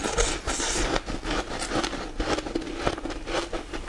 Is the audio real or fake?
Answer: real